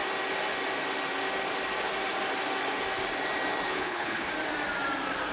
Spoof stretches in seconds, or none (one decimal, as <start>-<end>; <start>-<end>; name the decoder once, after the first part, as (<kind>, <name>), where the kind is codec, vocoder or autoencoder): 3.7-4.3 (codec, HILCodec)